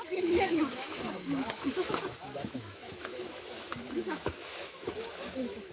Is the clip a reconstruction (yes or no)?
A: yes